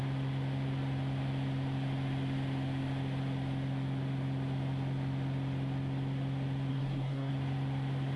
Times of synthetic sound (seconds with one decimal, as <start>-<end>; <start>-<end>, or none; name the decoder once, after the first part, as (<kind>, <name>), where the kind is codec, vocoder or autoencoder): 6.7-7.3 (codec, SNAC)